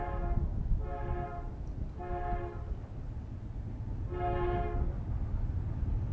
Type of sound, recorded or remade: recorded